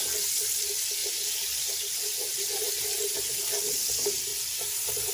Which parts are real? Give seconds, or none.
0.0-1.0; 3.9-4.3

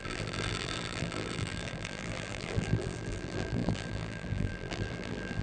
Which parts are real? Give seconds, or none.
none

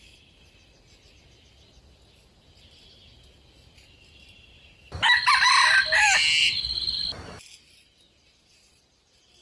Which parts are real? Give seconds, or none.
0.0-6.4; 7.1-9.4

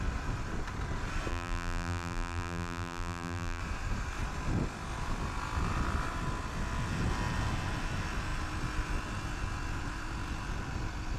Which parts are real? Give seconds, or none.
0.0-1.3; 3.6-11.2

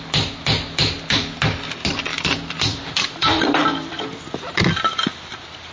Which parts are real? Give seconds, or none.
0.0-2.1